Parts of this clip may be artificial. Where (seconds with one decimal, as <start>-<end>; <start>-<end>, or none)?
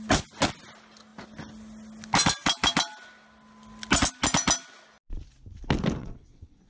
6.0-6.7